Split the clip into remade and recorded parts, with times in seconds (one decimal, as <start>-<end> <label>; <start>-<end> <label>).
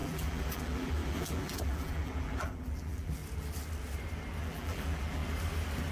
0.0-3.2 remade; 3.2-4.4 recorded; 4.4-5.2 remade; 5.2-5.9 recorded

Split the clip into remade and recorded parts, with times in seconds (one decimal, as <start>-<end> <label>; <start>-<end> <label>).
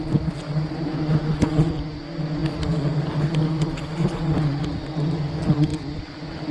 0.0-0.9 recorded; 0.9-1.7 remade; 1.7-6.5 recorded